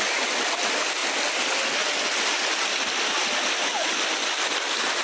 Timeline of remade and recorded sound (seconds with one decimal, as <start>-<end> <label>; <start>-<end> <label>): 0.0-5.0 recorded